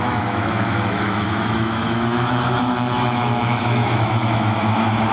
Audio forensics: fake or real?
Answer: fake